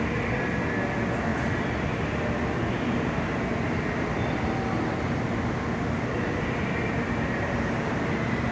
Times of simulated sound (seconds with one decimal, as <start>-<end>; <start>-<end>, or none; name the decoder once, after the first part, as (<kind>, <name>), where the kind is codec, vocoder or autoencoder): 1.3-2.4 (vocoder, BigVGAN v2)